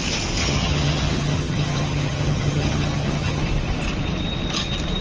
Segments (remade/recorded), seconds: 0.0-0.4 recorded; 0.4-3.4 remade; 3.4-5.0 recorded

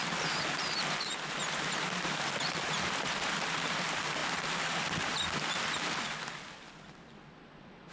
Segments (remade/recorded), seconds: 0.0-7.9 recorded

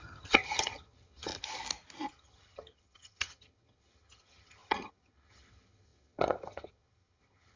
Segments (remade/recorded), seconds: 0.0-1.3 remade; 1.3-2.1 recorded; 2.1-7.6 remade

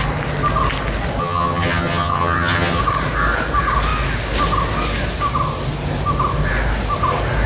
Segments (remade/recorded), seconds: 0.0-1.2 recorded; 1.2-2.8 remade; 2.8-7.5 recorded